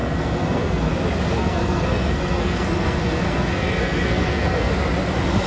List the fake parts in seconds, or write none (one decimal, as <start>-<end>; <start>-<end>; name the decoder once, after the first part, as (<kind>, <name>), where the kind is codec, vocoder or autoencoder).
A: 0.0-0.9 (codec, SNAC); 1.4-4.7

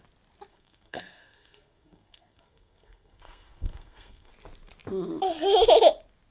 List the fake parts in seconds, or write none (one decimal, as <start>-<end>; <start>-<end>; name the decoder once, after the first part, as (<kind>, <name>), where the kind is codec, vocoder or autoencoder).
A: 0.5-4.3 (codec, SNAC)

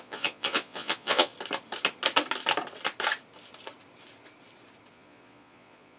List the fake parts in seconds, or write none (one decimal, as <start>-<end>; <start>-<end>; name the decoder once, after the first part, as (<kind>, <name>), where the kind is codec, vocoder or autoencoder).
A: 0.0-1.3 (vocoder, Vocos); 4.9-6.0

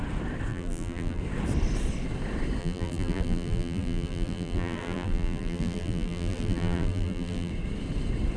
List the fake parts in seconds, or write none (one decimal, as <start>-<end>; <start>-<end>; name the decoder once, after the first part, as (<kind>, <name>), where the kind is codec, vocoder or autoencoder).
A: 0.5-1.2 (vocoder, BigVGAN v2); 2.6-7.5

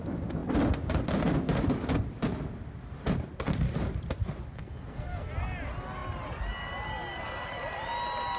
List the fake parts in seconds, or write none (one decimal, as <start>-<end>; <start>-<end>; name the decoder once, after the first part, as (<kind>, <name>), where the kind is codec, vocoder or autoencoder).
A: 4.6-5.3 (codec, SNAC)

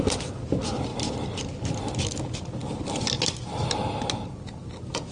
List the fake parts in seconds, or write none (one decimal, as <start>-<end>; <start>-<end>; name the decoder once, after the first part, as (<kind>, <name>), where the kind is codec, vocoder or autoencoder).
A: none

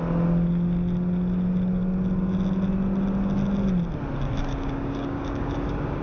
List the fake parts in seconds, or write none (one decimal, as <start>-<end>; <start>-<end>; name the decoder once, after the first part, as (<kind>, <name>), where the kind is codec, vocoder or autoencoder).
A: 4.4-6.0 (codec, DAC)

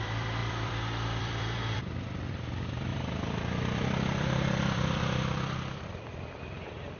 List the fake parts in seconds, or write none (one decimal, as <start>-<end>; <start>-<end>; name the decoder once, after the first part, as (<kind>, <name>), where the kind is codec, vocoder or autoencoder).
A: 0.0-7.0 (vocoder, BigVGAN v2)